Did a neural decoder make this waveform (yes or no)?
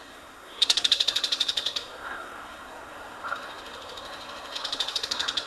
yes